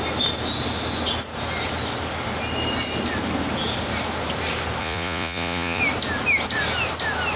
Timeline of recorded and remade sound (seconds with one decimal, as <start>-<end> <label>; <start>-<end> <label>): 0.0-4.8 recorded; 4.8-5.8 remade; 5.8-7.4 recorded